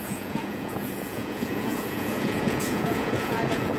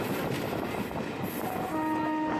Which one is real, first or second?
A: second